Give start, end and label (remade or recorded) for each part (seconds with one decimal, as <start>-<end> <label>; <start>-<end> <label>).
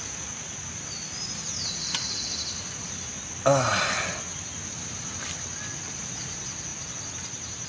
0.0-7.7 recorded